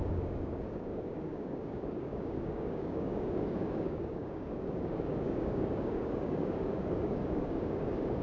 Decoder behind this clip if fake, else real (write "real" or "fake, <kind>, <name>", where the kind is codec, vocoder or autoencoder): fake, codec, DAC